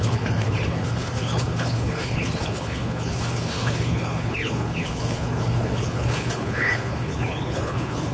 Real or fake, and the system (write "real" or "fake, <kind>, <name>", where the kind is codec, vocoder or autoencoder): fake, codec, HILCodec